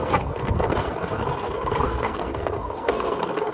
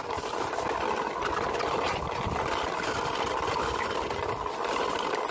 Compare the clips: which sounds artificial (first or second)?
first